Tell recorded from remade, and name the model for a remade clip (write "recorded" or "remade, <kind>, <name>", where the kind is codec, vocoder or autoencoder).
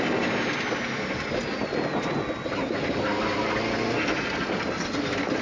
recorded